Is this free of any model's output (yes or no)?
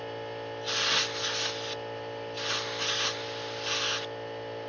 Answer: yes